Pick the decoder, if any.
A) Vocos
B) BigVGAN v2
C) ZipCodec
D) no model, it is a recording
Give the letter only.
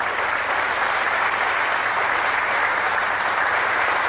D